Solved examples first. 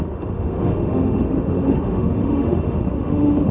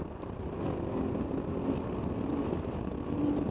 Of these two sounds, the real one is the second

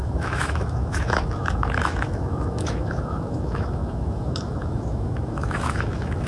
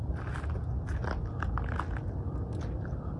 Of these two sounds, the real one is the second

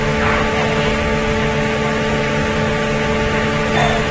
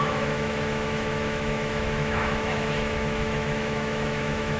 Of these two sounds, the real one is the first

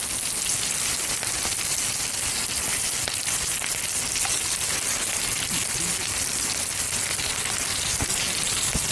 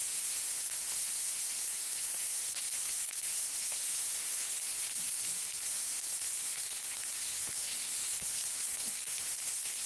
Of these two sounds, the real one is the first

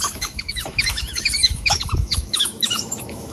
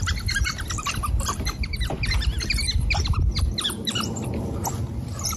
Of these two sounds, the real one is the second